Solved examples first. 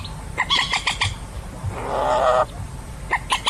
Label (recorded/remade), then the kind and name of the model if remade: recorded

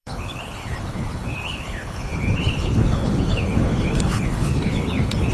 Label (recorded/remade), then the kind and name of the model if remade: remade, codec, HILCodec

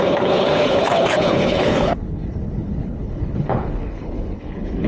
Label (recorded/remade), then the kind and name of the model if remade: remade, codec, HILCodec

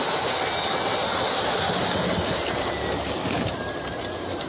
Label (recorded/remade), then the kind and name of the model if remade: recorded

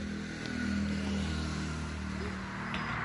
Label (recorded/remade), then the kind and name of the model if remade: recorded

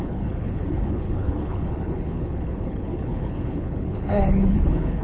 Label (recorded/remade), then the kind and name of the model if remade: remade, codec, HILCodec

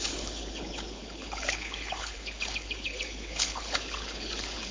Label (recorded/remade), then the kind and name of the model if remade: remade, codec, HILCodec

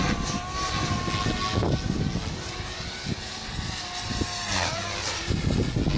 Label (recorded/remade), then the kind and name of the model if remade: recorded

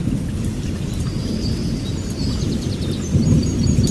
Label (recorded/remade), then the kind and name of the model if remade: recorded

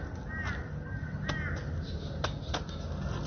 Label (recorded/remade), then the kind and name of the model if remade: recorded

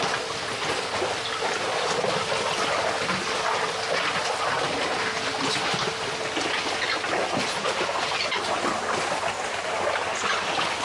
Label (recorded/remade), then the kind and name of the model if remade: recorded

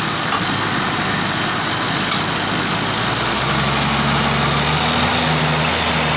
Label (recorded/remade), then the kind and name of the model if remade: recorded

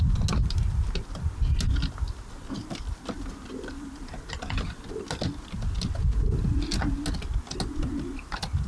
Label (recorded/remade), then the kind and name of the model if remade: recorded